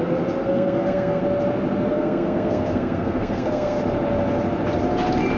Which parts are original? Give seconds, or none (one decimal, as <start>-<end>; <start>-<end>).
0.0-0.4; 1.2-1.9; 3.8-5.4